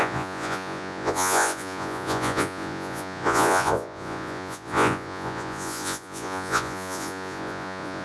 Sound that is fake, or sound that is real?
fake